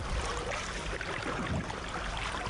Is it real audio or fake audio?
real